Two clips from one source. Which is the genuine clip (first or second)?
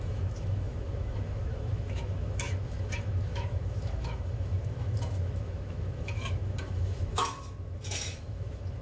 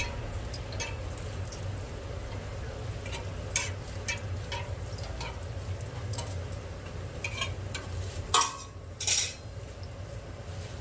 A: second